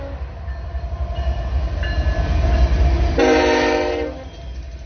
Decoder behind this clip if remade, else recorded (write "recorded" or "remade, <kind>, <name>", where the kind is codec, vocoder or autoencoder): recorded